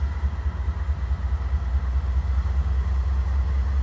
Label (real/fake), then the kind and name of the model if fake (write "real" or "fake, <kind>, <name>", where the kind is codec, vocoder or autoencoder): real